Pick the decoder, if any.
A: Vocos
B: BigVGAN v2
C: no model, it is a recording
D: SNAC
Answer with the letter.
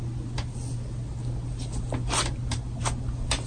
C